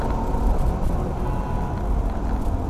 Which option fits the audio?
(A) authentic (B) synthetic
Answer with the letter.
A